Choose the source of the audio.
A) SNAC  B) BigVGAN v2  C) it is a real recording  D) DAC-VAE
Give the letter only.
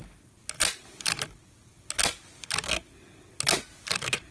C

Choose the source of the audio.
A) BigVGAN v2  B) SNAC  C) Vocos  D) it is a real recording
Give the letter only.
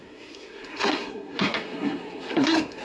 B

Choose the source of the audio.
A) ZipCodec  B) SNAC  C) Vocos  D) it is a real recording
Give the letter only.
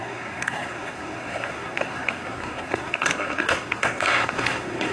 B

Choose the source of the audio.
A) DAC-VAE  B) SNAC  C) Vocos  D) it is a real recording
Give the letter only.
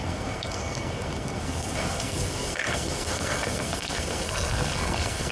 B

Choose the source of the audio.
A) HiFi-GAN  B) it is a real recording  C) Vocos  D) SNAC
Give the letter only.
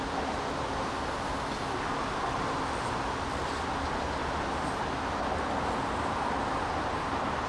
B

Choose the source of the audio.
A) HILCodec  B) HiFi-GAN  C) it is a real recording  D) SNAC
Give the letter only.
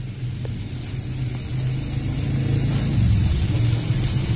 C